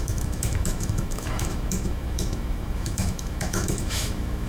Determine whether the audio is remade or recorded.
remade